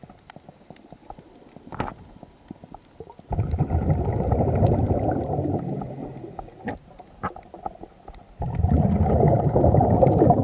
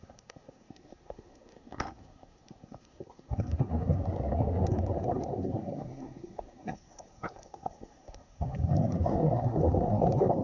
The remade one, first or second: second